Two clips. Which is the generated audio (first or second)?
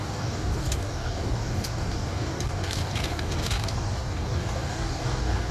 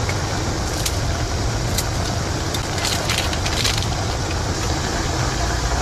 first